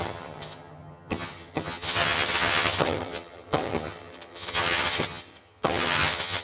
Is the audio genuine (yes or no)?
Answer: no